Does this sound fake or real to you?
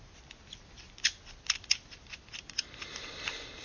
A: real